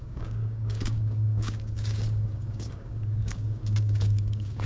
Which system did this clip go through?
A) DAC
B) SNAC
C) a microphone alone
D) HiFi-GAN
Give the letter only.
A